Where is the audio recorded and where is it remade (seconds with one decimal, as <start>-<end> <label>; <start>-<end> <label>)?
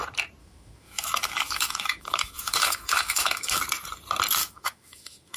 0.0-0.4 recorded; 0.4-3.6 remade; 3.6-4.4 recorded; 4.4-5.4 remade